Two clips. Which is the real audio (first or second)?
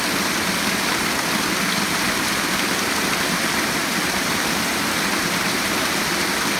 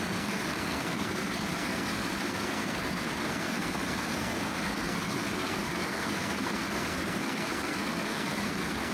first